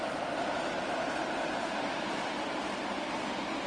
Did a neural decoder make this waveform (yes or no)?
no